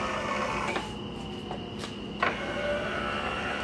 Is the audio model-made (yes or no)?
no